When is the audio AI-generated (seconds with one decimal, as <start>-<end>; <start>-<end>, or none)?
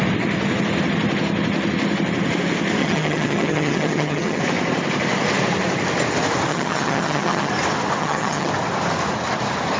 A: 2.8-4.4; 6.5-7.5; 8.0-8.5